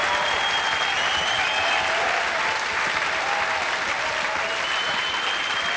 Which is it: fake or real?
real